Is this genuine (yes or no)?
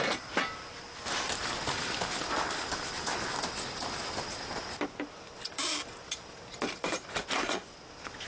yes